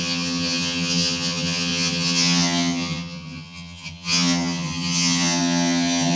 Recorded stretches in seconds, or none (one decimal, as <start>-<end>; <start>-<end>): none